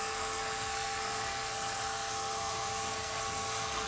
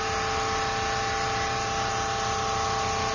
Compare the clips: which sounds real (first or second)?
second